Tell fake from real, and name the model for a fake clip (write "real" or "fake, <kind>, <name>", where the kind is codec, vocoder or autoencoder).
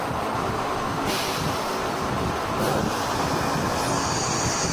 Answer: real